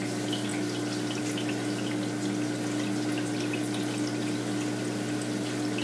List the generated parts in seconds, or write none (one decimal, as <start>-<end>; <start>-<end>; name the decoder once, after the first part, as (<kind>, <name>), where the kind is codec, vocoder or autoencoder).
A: none

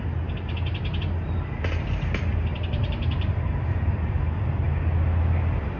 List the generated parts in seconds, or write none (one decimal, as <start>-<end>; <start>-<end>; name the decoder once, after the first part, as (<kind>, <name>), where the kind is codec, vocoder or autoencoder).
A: 2.5-4.2 (vocoder, BigVGAN v2)

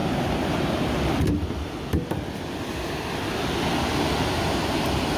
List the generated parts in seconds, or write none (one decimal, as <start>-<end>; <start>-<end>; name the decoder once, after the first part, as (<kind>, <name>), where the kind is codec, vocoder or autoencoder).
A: 0.0-3.1 (vocoder, BigVGAN v2)

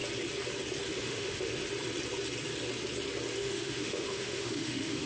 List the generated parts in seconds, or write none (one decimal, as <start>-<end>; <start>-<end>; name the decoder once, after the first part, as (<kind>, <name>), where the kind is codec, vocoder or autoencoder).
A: 0.9-1.5 (autoencoder, DAC-VAE); 3.4-5.1

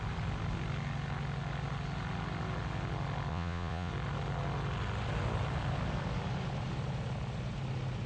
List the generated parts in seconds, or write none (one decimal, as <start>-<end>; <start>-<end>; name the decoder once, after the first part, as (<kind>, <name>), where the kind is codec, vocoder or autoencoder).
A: 3.3-3.9 (vocoder, Vocos)